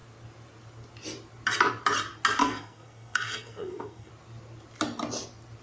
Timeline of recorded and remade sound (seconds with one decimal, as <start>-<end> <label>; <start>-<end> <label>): 0.0-2.4 recorded; 2.4-4.1 remade; 4.1-5.6 recorded